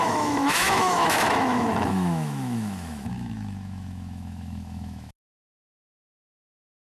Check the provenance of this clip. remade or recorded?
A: remade